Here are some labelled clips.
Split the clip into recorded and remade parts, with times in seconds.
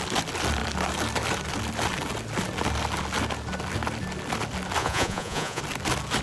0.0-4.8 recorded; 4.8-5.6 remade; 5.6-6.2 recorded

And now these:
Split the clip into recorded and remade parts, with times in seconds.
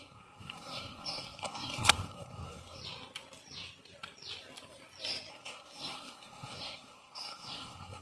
0.0-2.8 remade; 2.8-5.3 recorded; 5.3-8.0 remade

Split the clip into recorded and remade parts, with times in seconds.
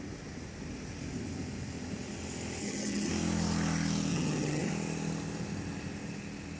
0.0-2.6 recorded; 2.6-3.1 remade; 3.1-4.1 recorded; 4.1-4.7 remade; 4.7-6.6 recorded